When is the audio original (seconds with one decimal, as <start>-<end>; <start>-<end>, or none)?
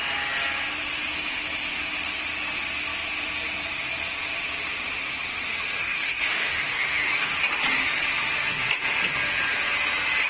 0.0-5.8; 7.3-10.3